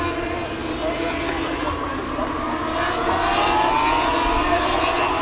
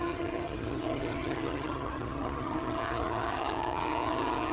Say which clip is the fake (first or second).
second